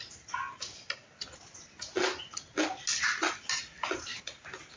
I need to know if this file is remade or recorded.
recorded